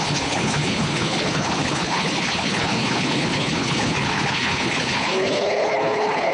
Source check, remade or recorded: remade